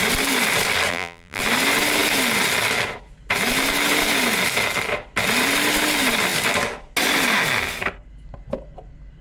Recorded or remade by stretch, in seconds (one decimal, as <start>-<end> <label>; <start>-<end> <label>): 0.0-0.9 recorded; 0.9-1.4 remade; 1.4-9.2 recorded